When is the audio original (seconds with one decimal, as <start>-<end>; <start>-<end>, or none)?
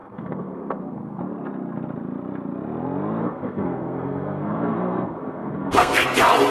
1.2-3.2; 6.0-6.5